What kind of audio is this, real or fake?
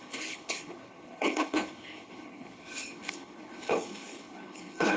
fake